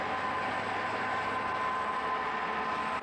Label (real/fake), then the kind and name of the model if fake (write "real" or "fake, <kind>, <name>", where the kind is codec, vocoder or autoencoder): real